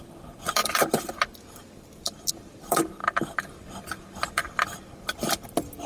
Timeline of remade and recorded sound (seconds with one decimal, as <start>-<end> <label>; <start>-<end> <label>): 0.0-3.0 remade; 3.0-3.7 recorded; 3.7-4.4 remade; 4.4-5.9 recorded